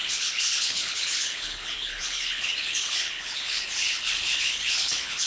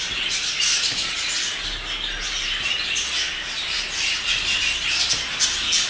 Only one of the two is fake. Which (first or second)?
first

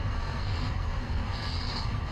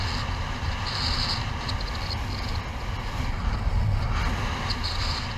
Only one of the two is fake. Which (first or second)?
first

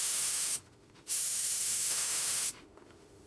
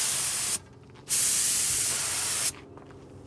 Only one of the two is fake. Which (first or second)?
first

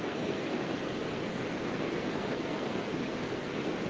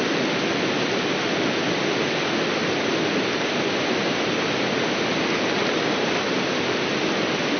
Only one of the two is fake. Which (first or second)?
first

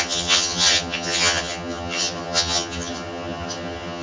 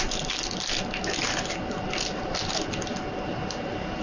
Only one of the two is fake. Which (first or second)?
first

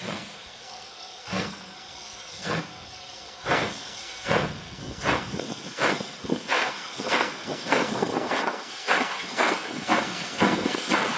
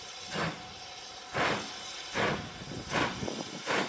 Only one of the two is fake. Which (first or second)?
first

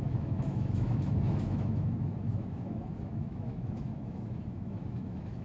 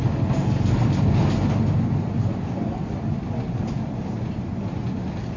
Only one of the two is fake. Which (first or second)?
first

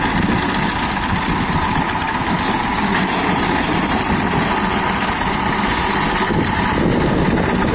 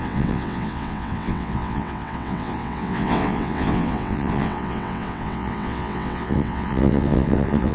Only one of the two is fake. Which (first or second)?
second